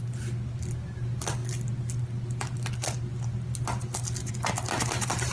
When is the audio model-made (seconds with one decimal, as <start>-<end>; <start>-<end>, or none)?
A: none

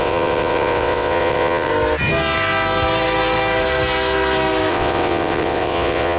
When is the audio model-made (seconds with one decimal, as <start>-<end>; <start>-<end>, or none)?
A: 0.0-1.7; 4.7-6.2

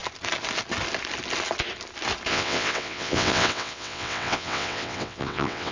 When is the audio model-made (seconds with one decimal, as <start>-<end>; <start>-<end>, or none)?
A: 2.3-5.7

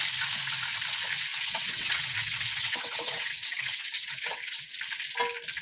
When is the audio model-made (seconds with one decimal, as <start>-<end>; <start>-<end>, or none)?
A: 1.3-4.7

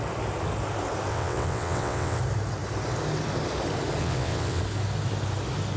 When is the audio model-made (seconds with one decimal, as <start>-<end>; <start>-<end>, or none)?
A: 1.1-2.2; 4.0-4.6

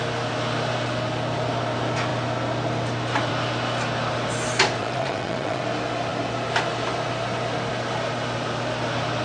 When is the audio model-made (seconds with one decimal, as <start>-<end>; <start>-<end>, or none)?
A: 4.8-5.6